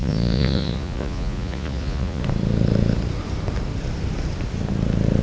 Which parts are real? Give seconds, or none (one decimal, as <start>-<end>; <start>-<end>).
2.2-5.2